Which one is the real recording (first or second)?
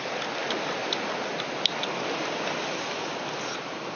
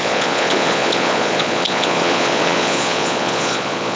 first